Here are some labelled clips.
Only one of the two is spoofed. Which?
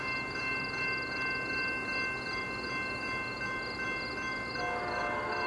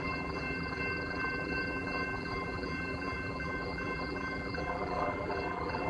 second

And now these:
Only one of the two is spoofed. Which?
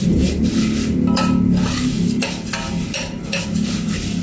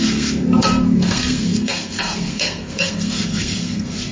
second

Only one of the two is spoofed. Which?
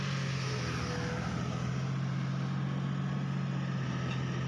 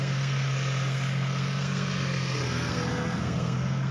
second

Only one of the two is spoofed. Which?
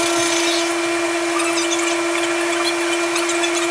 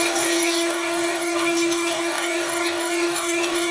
second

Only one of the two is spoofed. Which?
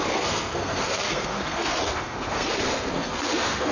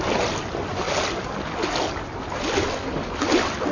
first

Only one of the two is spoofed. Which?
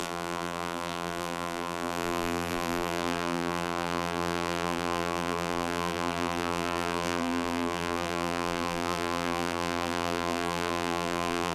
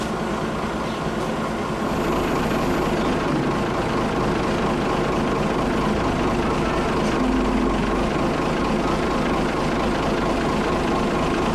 first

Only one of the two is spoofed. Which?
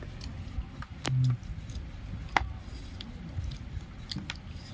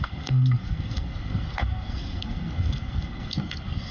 second